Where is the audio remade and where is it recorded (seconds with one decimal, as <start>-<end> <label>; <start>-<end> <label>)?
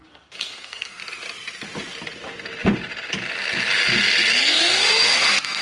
0.0-1.0 remade; 1.0-4.4 recorded; 4.4-5.6 remade